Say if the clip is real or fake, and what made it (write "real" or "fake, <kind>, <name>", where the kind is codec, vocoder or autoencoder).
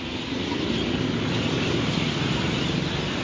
fake, vocoder, BigVGAN v2